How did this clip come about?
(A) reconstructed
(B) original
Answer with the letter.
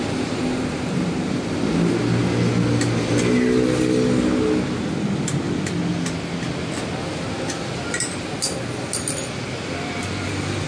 B